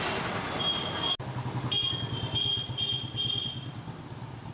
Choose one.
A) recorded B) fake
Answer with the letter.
A